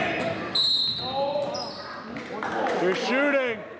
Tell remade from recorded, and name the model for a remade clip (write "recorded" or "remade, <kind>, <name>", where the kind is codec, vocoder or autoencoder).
recorded